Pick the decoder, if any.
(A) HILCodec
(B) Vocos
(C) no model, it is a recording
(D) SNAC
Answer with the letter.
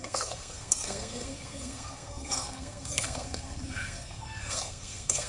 D